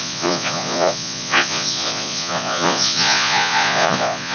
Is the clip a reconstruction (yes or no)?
yes